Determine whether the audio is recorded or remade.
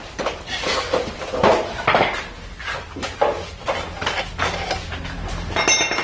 recorded